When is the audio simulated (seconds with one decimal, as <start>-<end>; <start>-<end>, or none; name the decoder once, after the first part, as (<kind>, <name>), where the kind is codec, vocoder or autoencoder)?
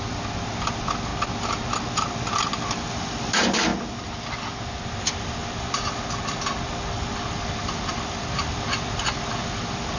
0.0-1.1 (vocoder, BigVGAN v2); 1.8-3.7; 5.0-5.4; 7.1-10.0